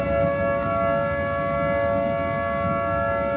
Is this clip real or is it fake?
real